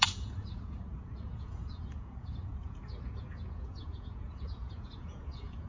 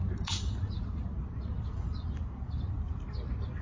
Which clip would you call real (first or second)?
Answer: second